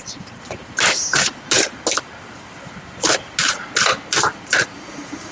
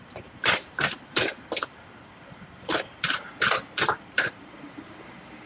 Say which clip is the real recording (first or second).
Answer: first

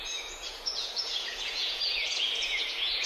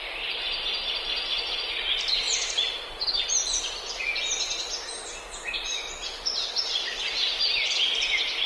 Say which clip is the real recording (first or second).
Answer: second